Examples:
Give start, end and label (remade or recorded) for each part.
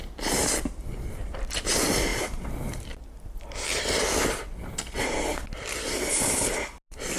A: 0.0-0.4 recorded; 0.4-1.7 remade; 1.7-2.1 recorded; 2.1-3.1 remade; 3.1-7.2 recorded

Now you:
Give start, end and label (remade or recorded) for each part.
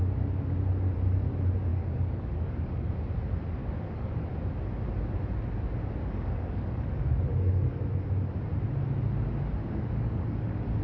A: 0.0-1.7 recorded; 1.7-2.9 remade; 2.9-3.6 recorded; 3.6-4.3 remade; 4.3-6.0 recorded; 6.0-7.8 remade; 7.8-9.6 recorded; 9.6-10.8 remade